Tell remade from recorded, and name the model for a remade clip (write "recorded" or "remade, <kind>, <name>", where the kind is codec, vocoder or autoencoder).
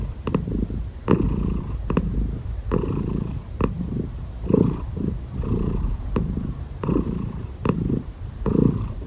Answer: remade, vocoder, BigVGAN v2